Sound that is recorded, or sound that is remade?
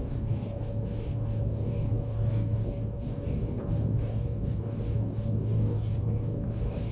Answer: remade